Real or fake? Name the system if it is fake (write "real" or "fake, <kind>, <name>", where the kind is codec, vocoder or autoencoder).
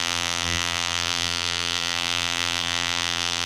fake, vocoder, BigVGAN v2